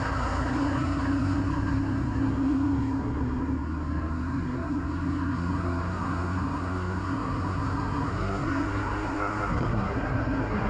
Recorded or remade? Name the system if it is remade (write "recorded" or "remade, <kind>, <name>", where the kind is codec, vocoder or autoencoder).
remade, codec, SNAC